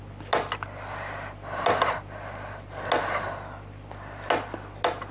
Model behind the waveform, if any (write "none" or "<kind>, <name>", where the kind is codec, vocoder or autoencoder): none